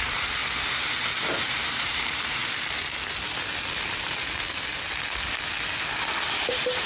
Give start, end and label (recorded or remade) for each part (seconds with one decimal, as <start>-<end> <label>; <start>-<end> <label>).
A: 0.0-0.4 remade; 0.4-1.4 recorded; 1.4-2.4 remade; 2.4-6.5 recorded; 6.5-6.9 remade